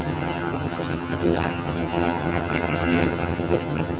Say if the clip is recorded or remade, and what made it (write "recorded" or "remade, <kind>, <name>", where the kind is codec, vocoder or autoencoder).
remade, vocoder, HiFi-GAN